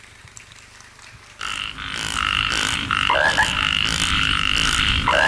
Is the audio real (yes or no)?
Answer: no